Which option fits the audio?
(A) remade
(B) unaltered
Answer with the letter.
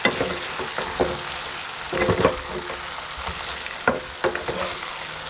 B